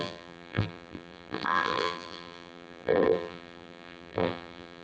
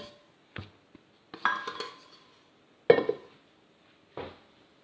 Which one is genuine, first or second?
second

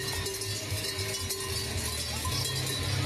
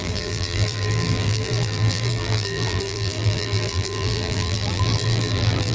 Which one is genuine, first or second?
first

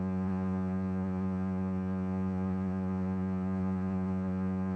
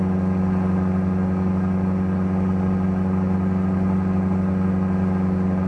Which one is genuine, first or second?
second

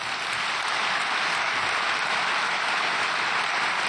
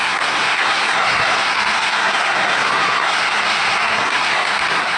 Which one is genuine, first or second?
first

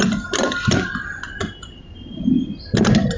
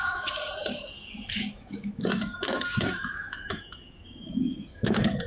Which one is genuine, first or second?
first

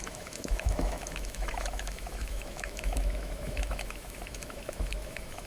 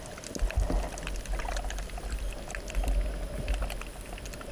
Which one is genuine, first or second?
second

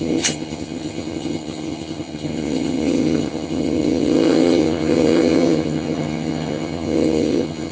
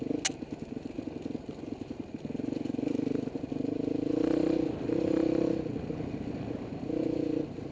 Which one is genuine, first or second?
second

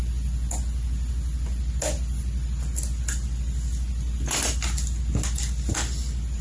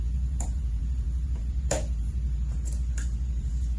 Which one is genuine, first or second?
first